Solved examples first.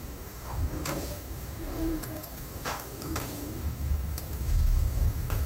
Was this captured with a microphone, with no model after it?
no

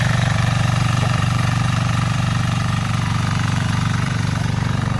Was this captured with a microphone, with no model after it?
no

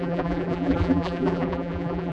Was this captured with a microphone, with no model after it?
no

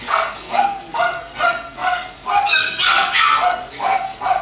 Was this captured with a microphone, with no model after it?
no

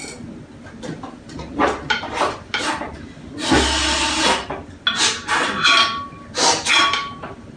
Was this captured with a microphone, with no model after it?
yes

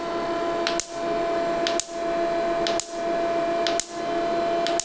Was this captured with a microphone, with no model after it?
yes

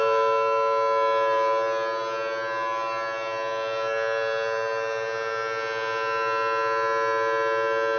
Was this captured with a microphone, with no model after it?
yes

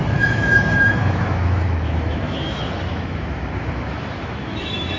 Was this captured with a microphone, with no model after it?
no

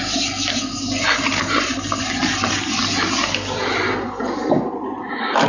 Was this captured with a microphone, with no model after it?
yes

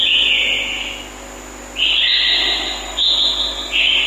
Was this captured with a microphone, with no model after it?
yes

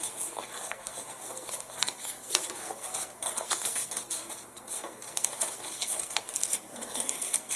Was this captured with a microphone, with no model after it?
no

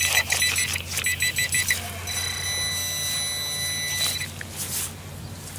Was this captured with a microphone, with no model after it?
yes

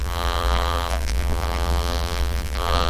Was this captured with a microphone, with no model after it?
no